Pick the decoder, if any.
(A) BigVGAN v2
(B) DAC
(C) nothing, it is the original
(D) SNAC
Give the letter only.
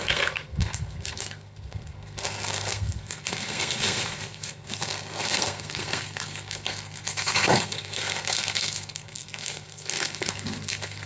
D